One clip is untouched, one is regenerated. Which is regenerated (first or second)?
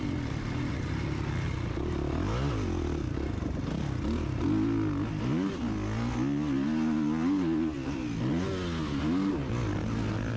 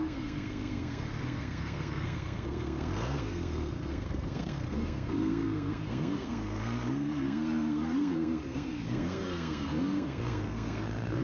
second